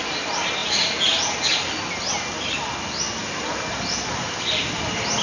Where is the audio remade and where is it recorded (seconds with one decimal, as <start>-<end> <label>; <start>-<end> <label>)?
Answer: 0.0-5.2 recorded